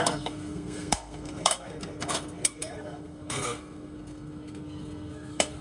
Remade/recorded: remade